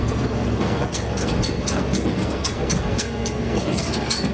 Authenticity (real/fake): fake